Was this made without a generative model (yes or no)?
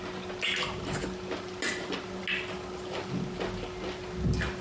yes